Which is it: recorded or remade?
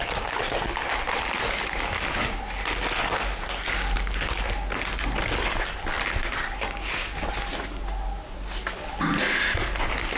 recorded